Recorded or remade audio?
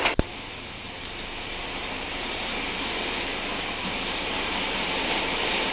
recorded